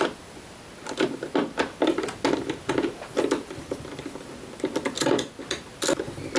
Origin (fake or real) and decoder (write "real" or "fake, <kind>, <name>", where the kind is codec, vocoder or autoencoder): real